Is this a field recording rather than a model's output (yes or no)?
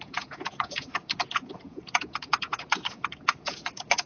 no